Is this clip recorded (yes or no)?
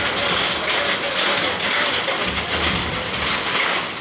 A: yes